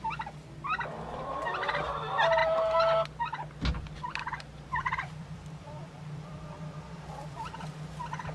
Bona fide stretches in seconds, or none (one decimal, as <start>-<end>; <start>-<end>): 0.0-4.2; 7.7-8.3